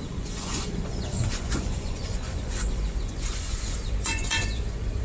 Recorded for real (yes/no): no